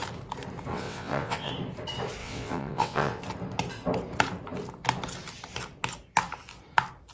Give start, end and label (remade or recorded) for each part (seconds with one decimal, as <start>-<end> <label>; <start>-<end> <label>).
0.0-0.7 recorded; 0.7-1.5 remade; 1.5-2.2 recorded; 2.2-3.2 remade; 3.2-7.1 recorded